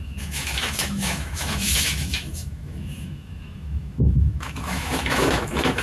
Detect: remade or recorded remade